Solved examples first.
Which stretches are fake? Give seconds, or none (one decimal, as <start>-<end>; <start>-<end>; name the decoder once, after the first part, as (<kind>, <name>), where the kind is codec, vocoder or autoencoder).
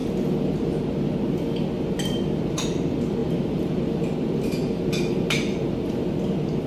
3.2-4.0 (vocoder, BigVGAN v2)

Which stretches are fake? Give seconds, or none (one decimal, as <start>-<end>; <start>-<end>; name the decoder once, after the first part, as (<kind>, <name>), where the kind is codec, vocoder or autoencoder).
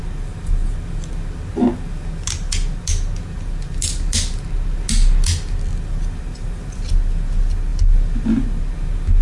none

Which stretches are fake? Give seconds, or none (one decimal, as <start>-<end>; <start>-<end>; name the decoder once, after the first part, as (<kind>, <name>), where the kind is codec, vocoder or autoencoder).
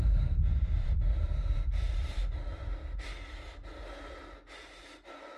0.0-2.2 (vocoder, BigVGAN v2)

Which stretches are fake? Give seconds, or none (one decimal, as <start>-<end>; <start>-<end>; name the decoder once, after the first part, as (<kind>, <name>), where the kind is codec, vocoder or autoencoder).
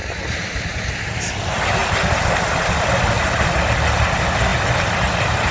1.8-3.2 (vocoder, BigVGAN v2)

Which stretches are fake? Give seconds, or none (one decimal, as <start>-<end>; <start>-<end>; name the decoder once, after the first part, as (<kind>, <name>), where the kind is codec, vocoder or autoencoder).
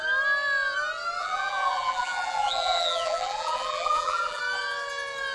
1.2-4.4 (vocoder, BigVGAN v2)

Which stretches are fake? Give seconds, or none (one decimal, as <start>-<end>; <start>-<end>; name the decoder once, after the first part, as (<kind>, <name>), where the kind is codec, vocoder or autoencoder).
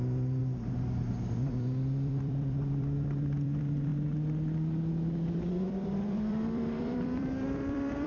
0.0-0.4 (vocoder, BigVGAN v2); 1.5-3.9; 5.5-8.1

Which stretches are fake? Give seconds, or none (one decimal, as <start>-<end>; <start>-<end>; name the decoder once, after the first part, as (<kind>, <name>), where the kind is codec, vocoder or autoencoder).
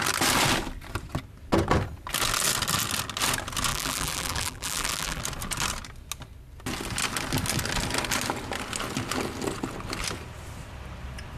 3.7-5.2 (vocoder, BigVGAN v2)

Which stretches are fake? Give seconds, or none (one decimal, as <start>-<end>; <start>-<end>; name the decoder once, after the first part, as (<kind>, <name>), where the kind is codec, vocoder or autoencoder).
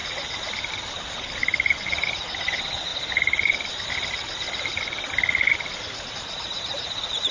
0.0-1.4 (vocoder, BigVGAN v2); 2.0-2.9; 6.1-7.3